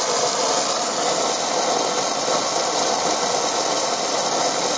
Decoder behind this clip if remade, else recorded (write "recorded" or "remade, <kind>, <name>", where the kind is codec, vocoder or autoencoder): recorded